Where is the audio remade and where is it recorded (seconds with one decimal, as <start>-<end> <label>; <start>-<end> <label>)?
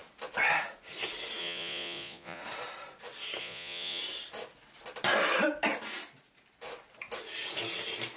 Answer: 0.0-1.4 recorded; 1.4-2.4 remade; 2.4-3.4 recorded; 3.4-4.0 remade; 4.0-8.2 recorded